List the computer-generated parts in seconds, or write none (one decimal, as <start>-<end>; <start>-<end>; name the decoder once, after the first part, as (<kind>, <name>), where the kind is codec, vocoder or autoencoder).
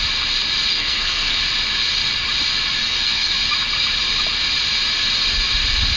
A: 0.7-1.4 (codec, SNAC); 2.8-3.3